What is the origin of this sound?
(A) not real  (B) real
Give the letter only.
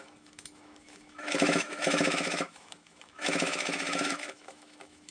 A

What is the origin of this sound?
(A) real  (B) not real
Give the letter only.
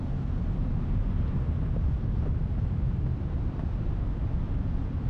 A